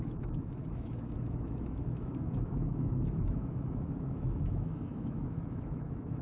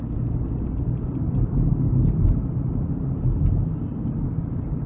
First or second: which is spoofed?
first